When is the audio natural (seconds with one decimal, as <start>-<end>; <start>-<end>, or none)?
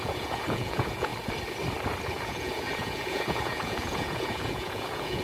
1.1-2.1